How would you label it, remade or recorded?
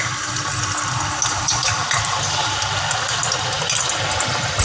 recorded